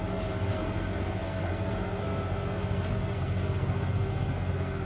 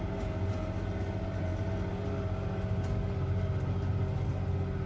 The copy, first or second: first